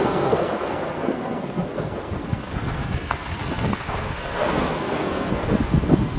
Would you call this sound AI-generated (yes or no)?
yes